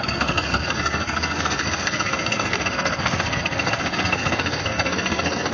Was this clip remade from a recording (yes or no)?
yes